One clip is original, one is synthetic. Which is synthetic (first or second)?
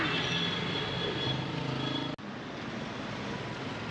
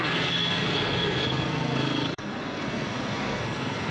second